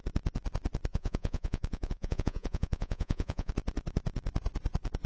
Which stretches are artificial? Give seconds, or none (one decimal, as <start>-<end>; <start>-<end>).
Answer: 0.9-3.5

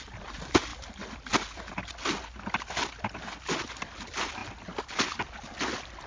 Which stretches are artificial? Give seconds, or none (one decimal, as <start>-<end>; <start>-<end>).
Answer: none

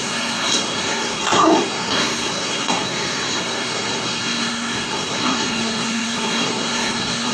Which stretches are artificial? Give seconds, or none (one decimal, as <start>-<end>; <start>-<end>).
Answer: 0.0-7.3

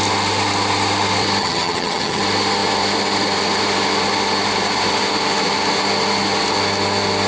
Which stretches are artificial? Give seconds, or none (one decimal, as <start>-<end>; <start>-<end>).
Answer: 1.4-2.2

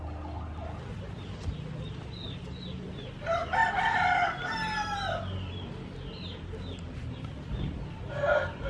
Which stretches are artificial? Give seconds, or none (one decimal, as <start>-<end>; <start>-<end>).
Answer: 3.6-5.5; 6.3-8.2

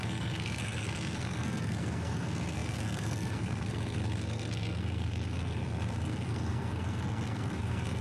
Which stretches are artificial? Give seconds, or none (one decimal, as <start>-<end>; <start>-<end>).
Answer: 0.0-8.0

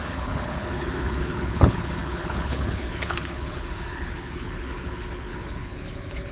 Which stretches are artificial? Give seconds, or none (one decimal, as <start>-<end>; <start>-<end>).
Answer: 0.0-6.3